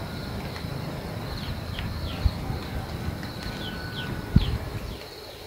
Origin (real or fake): real